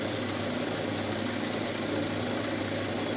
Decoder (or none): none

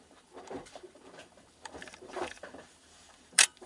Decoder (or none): vocoder, BigVGAN v2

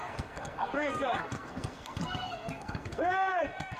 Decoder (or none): codec, SNAC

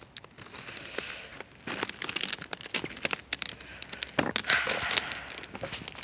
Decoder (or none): none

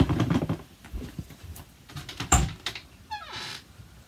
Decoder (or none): none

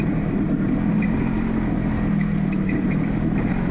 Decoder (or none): none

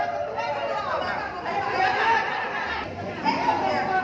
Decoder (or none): vocoder, BigVGAN v2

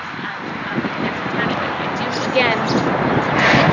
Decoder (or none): none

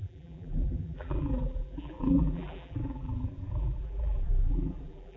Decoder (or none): vocoder, BigVGAN v2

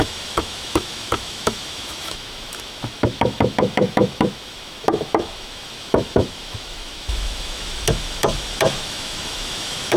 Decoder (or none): autoencoder, DAC-VAE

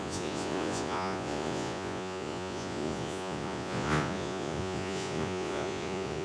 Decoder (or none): vocoder, Vocos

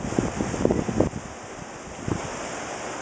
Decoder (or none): none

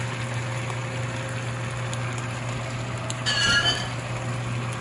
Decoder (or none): none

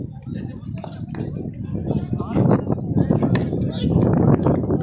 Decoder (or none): none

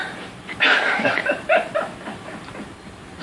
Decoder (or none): none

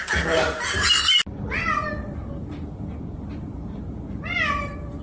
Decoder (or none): none